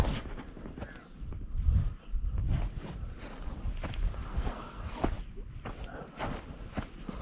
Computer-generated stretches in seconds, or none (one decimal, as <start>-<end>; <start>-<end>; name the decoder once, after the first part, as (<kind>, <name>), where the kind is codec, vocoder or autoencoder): 4.3-5.0 (codec, SNAC)